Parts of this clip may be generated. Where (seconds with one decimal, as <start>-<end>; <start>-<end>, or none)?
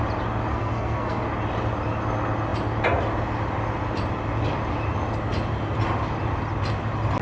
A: 0.5-1.2